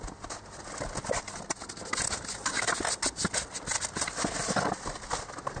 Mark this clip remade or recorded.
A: recorded